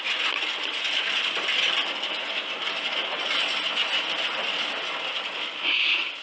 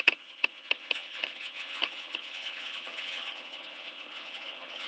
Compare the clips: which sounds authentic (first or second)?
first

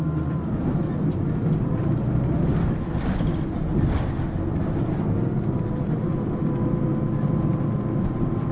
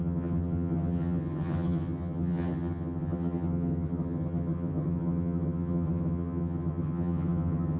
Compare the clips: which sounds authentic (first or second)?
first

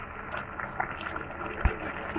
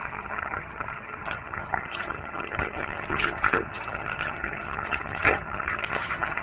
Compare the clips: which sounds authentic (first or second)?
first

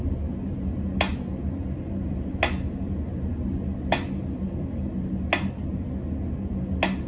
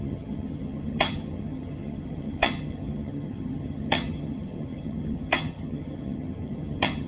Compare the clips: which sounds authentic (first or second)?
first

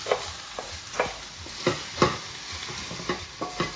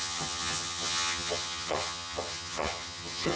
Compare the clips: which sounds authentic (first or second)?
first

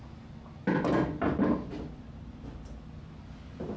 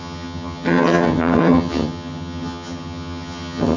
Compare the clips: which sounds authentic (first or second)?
first